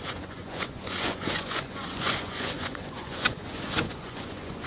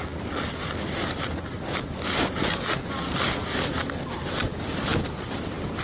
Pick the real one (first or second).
second